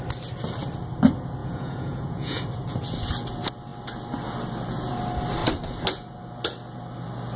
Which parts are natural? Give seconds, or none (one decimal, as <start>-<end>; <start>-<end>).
0.0-1.4; 2.4-7.4